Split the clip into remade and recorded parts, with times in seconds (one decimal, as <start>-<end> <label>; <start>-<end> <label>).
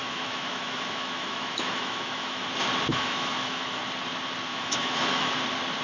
0.0-2.5 remade; 2.5-2.9 recorded; 2.9-3.8 remade; 3.8-4.5 recorded; 4.5-5.3 remade; 5.3-5.8 recorded